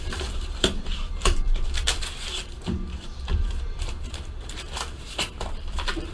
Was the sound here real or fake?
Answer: fake